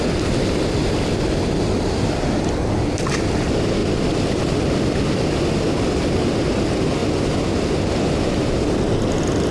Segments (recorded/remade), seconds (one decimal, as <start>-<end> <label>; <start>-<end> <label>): 0.0-9.5 recorded